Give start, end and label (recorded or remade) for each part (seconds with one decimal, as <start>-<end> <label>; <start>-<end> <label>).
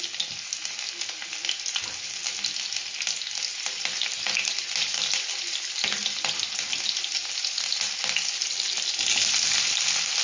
0.0-10.2 recorded